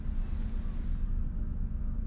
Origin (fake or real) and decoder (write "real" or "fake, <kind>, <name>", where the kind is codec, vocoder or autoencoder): real